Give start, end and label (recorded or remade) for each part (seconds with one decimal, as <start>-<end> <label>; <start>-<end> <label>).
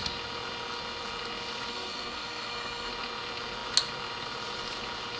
0.0-1.7 recorded; 1.7-2.9 remade; 2.9-5.2 recorded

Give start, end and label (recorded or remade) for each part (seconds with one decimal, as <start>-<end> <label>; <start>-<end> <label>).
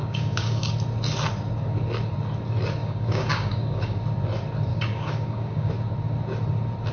0.0-0.7 remade; 0.7-2.8 recorded; 2.8-4.0 remade; 4.0-4.7 recorded; 4.7-5.7 remade; 5.7-6.9 recorded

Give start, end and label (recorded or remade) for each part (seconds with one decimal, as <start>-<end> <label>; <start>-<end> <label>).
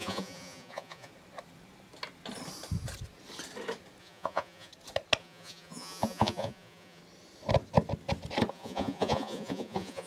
0.0-1.1 remade; 1.1-4.0 recorded; 4.0-4.7 remade; 4.7-5.2 recorded; 5.2-7.0 remade; 7.0-8.5 recorded; 8.5-10.1 remade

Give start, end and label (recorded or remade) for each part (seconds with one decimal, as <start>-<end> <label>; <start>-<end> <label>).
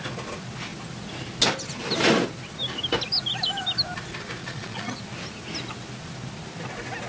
0.0-4.4 recorded; 4.4-4.9 remade; 4.9-7.1 recorded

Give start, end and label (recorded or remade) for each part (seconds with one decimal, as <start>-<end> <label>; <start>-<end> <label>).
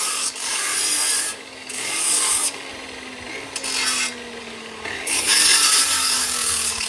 0.0-0.7 remade; 0.7-1.2 recorded; 1.2-2.7 remade; 2.7-4.4 recorded; 4.4-6.9 remade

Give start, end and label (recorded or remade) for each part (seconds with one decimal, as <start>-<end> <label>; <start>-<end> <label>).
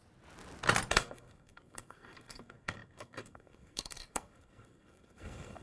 0.0-0.9 recorded; 0.9-5.6 remade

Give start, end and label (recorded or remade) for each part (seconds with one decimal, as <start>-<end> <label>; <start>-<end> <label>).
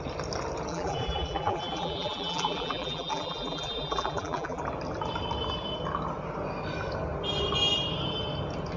0.0-0.7 recorded; 0.7-4.6 remade; 4.6-8.8 recorded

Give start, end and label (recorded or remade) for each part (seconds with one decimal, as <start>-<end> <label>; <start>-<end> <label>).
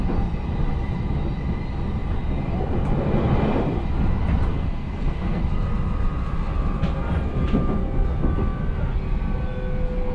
0.0-4.5 recorded; 4.5-5.4 remade; 5.4-10.1 recorded